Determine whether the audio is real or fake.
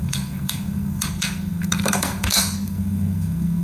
fake